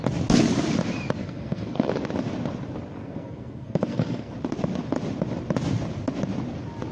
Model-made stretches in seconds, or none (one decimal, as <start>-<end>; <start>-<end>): 1.2-1.9; 3.0-4.3